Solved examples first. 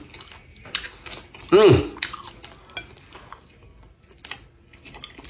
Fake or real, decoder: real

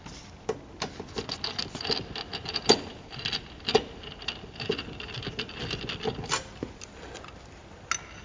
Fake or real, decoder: real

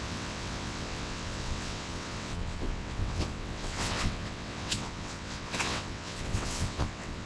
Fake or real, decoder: fake, vocoder, WaveNeXt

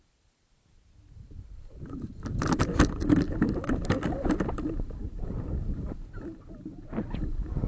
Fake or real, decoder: real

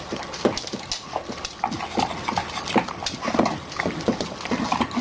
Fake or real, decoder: real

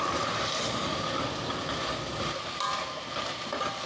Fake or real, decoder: real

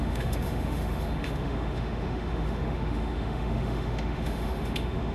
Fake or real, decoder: fake, autoencoder, DAC-VAE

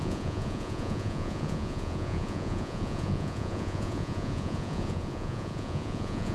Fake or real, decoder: fake, vocoder, Vocos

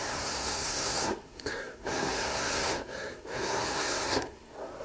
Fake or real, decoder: fake, codec, SNAC